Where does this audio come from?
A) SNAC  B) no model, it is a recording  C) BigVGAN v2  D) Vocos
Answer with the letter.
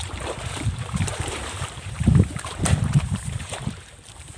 C